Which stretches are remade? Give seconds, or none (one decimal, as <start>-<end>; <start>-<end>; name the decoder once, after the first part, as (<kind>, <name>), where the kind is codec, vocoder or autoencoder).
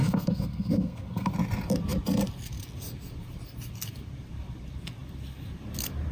0.0-1.3 (codec, SNAC)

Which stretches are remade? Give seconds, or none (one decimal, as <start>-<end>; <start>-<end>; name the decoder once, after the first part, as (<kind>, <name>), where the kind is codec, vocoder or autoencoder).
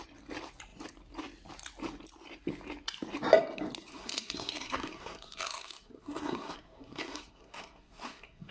3.9-8.5 (codec, SNAC)